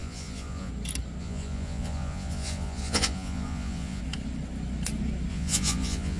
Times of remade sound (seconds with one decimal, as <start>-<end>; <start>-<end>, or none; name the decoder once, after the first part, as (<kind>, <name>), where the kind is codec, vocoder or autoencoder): 0.0-0.7 (vocoder, Vocos); 1.2-4.0; 5.3-6.2